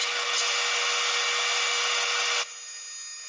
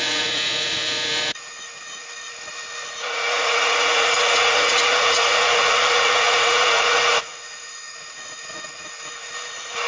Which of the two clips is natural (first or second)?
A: first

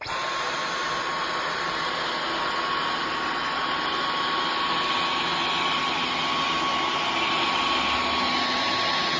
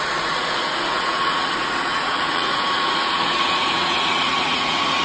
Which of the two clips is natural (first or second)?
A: first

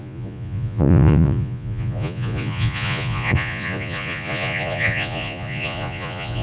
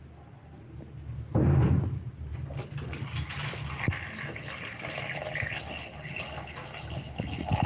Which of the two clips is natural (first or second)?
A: second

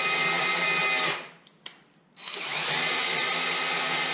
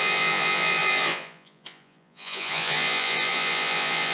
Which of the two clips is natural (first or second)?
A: first